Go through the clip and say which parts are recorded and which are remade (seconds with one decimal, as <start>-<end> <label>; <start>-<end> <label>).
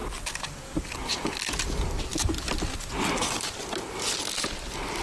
0.0-5.0 recorded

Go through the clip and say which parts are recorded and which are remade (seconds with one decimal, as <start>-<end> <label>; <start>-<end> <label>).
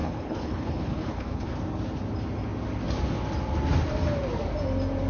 0.0-1.5 remade; 1.5-5.1 recorded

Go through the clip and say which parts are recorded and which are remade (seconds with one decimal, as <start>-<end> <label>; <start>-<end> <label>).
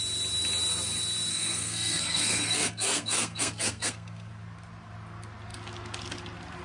0.0-1.3 recorded; 1.3-4.3 remade; 4.3-6.6 recorded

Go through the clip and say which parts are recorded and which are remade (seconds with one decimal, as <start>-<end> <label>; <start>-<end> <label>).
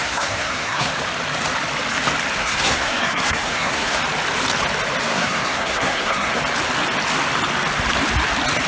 0.0-0.9 remade; 0.9-2.4 recorded; 2.4-4.0 remade; 4.0-5.1 recorded; 5.1-6.4 remade; 6.4-8.7 recorded